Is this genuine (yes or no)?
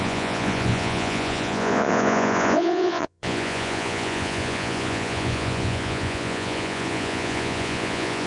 no